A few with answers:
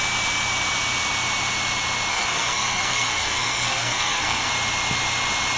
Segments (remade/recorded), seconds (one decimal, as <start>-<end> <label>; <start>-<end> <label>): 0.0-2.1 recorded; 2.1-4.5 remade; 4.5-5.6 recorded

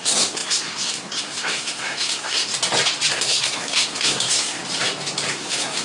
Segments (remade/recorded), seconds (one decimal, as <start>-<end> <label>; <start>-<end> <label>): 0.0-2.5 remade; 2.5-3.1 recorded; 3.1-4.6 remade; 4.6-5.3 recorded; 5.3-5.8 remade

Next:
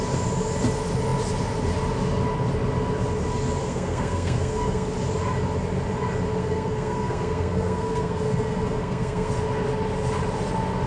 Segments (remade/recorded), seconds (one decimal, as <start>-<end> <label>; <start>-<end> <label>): 0.0-3.6 recorded; 3.6-4.9 remade; 4.9-6.4 recorded; 6.4-9.3 remade; 9.3-10.9 recorded

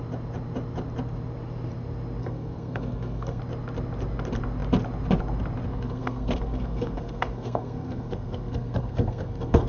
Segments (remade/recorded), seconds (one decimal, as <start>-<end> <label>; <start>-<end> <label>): 0.0-2.2 recorded; 2.2-3.4 remade; 3.4-5.7 recorded; 5.7-9.7 remade